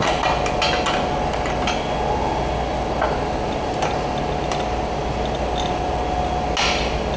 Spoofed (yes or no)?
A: no